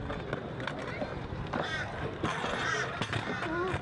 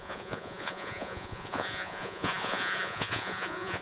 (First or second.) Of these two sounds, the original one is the first